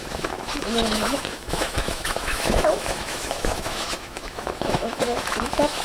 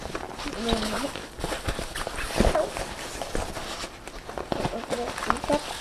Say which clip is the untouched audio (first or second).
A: second